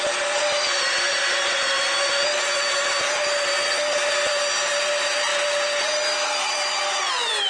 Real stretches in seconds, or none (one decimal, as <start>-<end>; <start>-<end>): 0.0-7.5